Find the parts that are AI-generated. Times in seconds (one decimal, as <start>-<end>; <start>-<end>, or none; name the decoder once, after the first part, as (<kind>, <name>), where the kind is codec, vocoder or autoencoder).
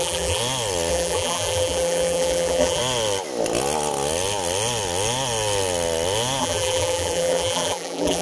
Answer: 0.0-0.4 (vocoder, BigVGAN v2); 0.9-2.8; 6.4-8.2